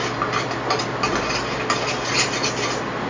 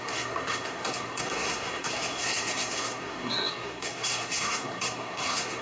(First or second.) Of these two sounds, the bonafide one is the first